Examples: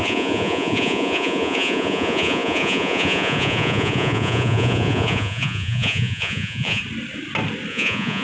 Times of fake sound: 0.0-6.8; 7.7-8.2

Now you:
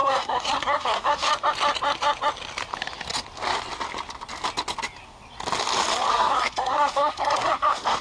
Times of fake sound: 0.0-1.3; 6.1-8.0